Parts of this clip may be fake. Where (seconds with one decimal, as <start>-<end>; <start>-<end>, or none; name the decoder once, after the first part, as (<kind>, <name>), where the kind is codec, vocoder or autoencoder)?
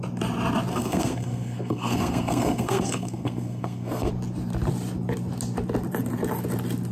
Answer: 0.7-4.1 (codec, SNAC)